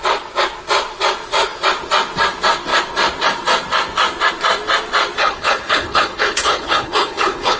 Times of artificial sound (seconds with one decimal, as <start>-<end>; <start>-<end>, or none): 5.2-7.6